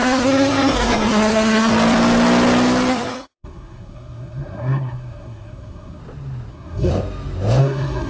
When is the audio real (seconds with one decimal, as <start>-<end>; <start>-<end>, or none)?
1.7-2.9; 6.0-6.5; 6.9-7.6